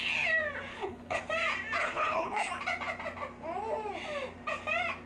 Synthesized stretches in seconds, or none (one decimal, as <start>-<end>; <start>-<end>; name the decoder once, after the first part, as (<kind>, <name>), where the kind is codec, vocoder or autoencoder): 0.7-1.2 (codec, HILCodec); 1.8-2.5